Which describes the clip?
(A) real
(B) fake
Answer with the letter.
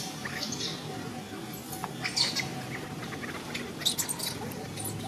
A